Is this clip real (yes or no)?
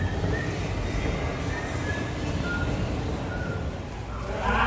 yes